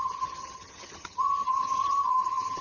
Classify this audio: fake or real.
fake